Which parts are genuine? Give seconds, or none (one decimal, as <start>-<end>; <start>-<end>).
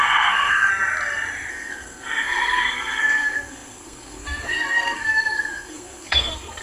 0.7-1.5